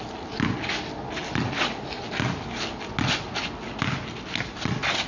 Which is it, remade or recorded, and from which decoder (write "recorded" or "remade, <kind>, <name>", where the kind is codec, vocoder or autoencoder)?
recorded